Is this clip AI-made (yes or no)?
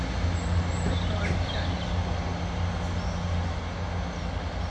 no